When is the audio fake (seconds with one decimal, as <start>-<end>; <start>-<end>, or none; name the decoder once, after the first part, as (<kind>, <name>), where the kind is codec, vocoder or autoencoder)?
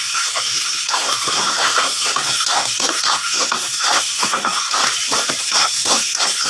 0.0-4.8 (codec, SNAC); 5.4-6.5